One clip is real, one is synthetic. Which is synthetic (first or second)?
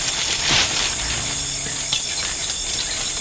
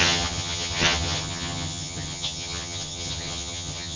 second